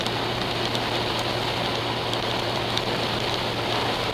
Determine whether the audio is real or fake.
real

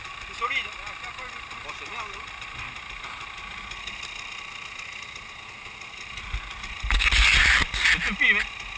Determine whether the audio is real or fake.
real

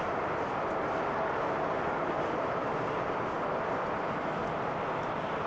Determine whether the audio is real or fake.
real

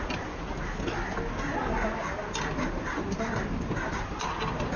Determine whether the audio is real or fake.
real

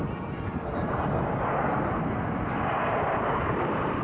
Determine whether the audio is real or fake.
real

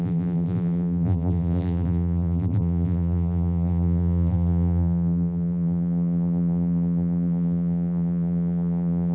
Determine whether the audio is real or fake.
fake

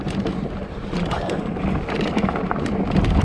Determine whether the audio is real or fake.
fake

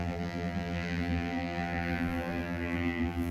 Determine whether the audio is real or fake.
fake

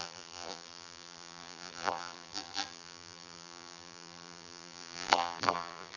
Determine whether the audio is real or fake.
fake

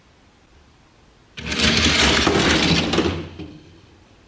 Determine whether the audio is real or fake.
real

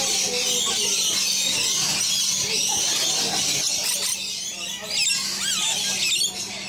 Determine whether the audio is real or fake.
real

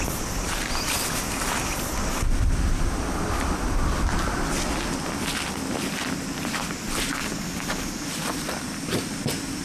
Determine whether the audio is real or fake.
real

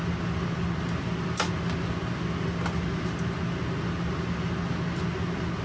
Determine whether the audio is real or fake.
real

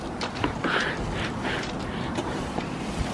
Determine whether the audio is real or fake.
fake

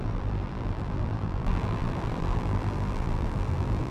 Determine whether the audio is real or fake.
fake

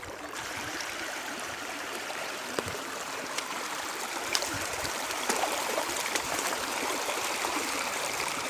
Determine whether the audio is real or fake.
fake